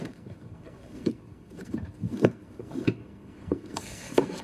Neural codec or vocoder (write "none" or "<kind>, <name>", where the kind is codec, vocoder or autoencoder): codec, SNAC